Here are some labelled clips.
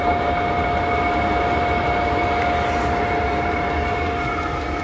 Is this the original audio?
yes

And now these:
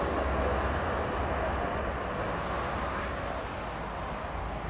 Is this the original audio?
yes